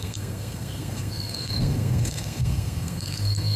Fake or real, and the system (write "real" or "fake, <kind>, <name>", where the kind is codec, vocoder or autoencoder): fake, codec, SNAC